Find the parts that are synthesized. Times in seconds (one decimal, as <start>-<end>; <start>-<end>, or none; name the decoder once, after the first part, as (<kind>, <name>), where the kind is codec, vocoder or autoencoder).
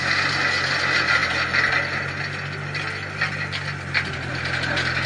none